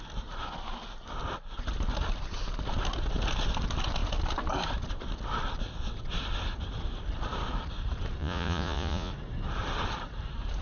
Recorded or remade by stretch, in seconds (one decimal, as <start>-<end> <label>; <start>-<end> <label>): 0.0-8.2 recorded; 8.2-9.1 remade; 9.1-10.6 recorded